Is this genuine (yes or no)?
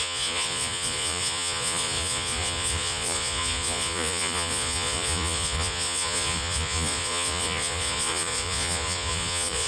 no